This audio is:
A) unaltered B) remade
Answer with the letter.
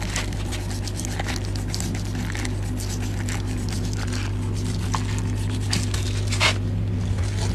A